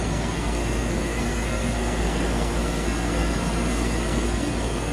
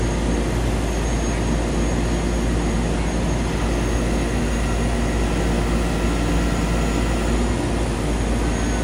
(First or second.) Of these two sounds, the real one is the second